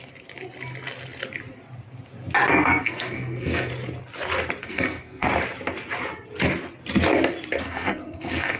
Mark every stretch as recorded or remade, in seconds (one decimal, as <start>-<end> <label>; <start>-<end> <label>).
0.0-2.5 recorded; 2.5-3.7 remade; 3.7-4.6 recorded; 4.6-5.3 remade; 5.3-7.6 recorded; 7.6-8.6 remade